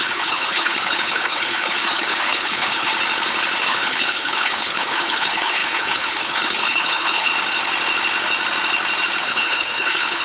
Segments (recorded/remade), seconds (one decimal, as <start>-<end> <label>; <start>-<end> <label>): 0.0-2.9 remade; 2.9-3.6 recorded; 3.6-7.3 remade; 7.3-9.2 recorded; 9.2-10.2 remade